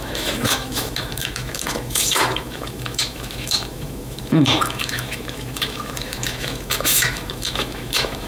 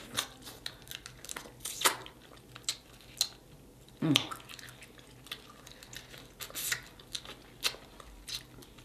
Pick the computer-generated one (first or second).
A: first